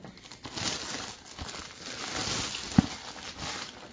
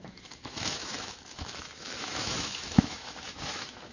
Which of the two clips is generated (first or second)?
second